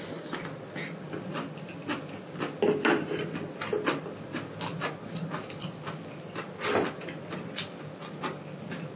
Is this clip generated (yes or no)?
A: no